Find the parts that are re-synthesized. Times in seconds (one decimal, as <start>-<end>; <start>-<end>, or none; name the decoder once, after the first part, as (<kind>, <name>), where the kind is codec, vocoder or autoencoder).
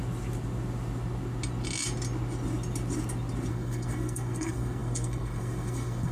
3.5-6.1 (codec, SNAC)